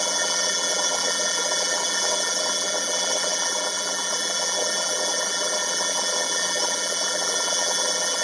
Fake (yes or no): yes